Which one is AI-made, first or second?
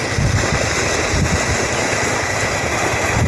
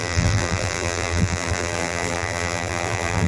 second